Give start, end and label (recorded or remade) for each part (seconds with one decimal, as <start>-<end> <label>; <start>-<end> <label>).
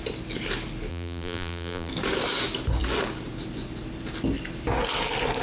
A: 0.0-0.9 recorded; 0.9-1.9 remade; 1.9-5.4 recorded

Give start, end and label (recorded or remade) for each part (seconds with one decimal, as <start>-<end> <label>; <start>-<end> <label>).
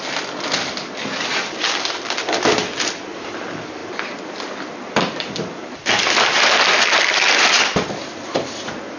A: 0.0-3.8 remade; 3.8-4.9 recorded; 4.9-9.0 remade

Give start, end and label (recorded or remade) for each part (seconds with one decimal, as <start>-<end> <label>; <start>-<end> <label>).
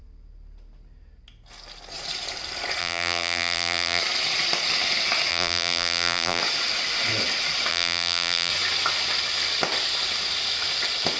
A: 0.0-2.8 recorded; 2.8-4.0 remade; 4.0-5.3 recorded; 5.3-6.4 remade; 6.4-7.7 recorded; 7.7-8.5 remade; 8.5-11.2 recorded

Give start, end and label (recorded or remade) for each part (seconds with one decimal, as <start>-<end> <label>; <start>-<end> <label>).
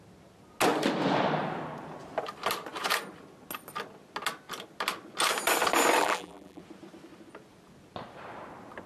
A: 0.0-6.0 recorded; 6.0-6.6 remade; 6.6-8.9 recorded